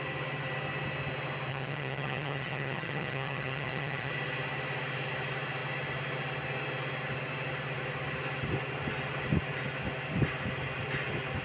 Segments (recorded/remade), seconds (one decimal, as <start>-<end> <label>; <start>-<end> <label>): 0.0-1.5 recorded; 1.5-4.1 remade; 4.1-11.4 recorded